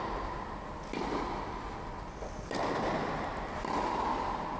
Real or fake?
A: real